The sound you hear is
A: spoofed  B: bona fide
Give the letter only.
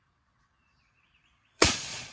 A